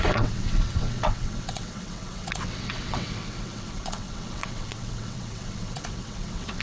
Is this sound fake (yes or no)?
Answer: yes